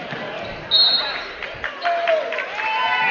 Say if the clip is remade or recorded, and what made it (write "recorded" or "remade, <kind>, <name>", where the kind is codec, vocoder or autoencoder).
recorded